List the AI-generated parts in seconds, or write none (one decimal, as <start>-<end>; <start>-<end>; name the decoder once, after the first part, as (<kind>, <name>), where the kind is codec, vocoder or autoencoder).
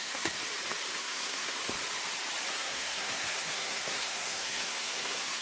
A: 0.0-0.4 (codec, SNAC); 1.0-1.6; 2.5-5.4